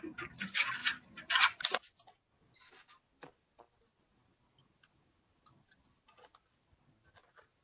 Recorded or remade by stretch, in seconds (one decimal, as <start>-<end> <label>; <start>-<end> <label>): 0.0-7.6 recorded